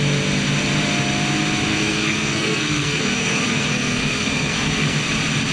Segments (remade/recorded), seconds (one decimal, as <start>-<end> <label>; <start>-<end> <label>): 0.0-1.7 recorded; 1.7-5.0 remade; 5.0-5.5 recorded